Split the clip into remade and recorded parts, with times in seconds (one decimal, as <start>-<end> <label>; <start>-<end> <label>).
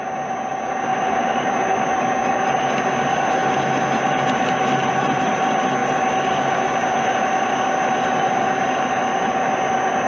0.0-0.9 recorded; 0.9-1.4 remade; 1.4-10.1 recorded